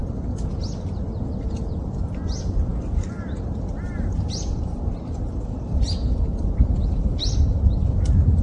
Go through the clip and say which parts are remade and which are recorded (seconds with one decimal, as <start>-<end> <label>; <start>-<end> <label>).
0.0-8.4 recorded